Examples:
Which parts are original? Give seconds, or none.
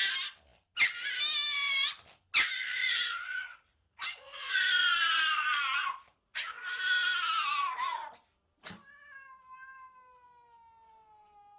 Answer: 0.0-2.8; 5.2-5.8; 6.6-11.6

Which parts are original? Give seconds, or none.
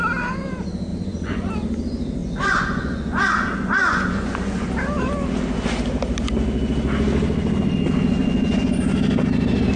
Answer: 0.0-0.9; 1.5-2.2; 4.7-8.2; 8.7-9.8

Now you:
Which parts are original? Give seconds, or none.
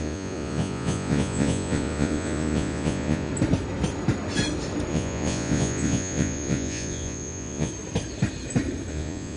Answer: 3.3-4.9; 7.7-8.9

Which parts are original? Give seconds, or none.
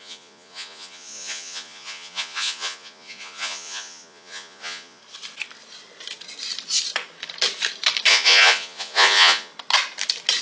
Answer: 5.0-8.1; 9.5-10.4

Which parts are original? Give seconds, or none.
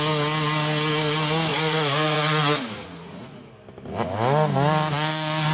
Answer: 0.0-1.5; 3.5-5.5